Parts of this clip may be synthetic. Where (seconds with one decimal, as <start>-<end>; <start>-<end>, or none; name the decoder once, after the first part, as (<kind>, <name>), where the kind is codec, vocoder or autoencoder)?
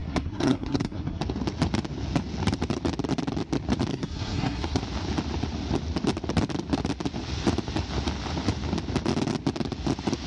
0.0-1.2 (codec, SNAC); 3.9-4.8